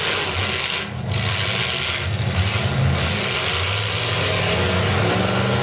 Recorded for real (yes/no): yes